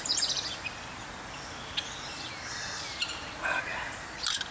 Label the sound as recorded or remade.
recorded